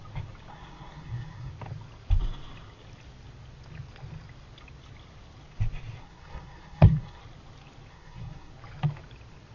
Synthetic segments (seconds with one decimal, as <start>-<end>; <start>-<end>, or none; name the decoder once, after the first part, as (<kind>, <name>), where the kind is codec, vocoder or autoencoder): 0.5-1.5 (codec, SNAC); 6.0-7.2; 7.9-8.5